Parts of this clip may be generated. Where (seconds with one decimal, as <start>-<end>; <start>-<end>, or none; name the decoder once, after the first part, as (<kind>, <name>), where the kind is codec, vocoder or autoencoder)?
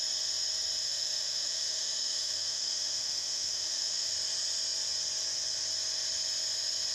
0.8-4.1 (autoencoder, DAC-VAE)